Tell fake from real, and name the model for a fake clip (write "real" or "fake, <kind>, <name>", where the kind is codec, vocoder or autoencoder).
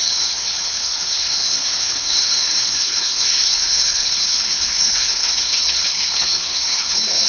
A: fake, codec, HILCodec